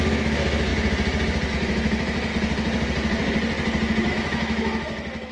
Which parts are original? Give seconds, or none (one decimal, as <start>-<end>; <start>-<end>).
0.7-1.5; 2.3-4.1